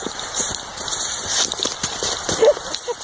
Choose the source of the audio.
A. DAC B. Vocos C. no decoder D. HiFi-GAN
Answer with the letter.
C